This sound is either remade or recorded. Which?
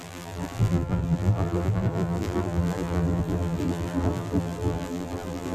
remade